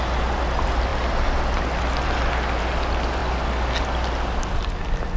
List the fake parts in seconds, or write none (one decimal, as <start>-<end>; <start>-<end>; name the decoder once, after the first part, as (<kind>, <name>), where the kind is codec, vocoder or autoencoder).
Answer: none